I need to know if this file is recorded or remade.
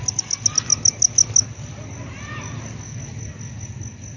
recorded